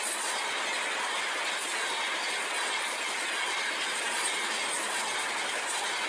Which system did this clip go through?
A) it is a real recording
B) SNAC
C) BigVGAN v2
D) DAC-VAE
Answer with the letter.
A